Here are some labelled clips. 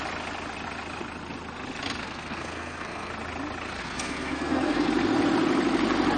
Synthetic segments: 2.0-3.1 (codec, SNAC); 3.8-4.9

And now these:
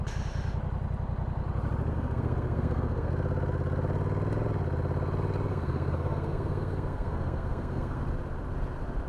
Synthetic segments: 1.9-3.1 (codec, SNAC); 5.5-8.0

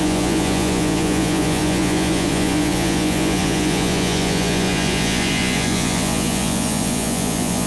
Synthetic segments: 0.0-7.7 (vocoder, Vocos)

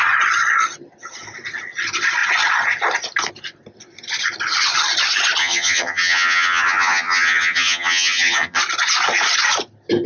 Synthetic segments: 5.4-8.6 (vocoder, HiFi-GAN)